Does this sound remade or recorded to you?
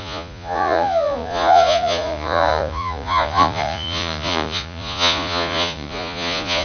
remade